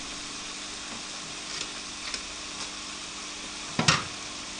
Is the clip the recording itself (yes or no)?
yes